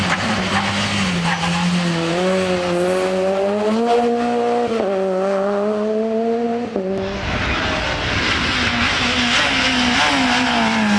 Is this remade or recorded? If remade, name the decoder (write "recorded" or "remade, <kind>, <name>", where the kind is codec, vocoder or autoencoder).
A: recorded